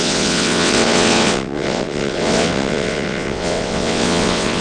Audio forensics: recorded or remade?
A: remade